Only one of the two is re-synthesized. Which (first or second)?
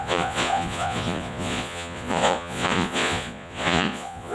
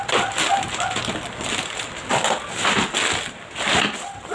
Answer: first